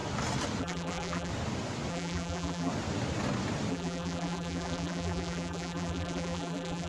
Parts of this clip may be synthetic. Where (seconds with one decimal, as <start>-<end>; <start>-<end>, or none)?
0.6-1.3; 1.9-2.7; 3.7-6.9